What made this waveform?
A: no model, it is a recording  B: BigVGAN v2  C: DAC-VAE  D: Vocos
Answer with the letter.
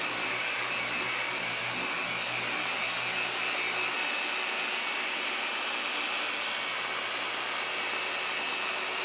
A